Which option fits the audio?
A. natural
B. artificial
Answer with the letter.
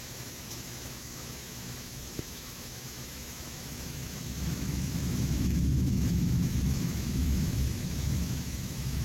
B